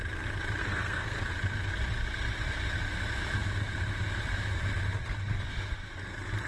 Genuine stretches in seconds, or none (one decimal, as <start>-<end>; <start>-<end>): 0.0-0.6; 1.3-6.5